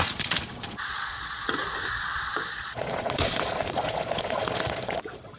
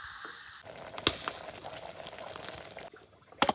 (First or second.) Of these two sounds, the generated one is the first